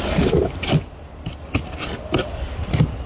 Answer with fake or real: real